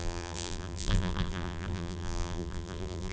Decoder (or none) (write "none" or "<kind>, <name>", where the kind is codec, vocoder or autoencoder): vocoder, BigVGAN v2